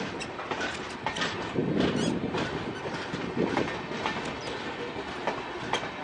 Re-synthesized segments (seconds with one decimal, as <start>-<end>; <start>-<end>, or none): none